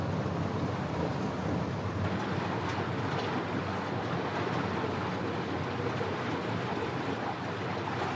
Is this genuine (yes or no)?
yes